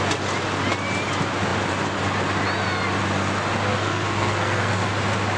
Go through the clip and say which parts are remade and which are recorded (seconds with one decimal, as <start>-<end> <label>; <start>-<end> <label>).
0.0-3.7 recorded; 3.7-4.9 remade; 4.9-5.4 recorded